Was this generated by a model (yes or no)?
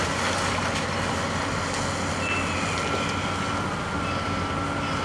no